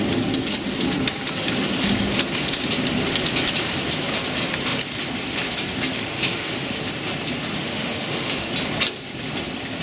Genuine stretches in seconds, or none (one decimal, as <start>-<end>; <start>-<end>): 0.0-6.1; 6.9-7.6; 8.5-9.8